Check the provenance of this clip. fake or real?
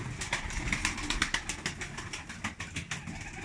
real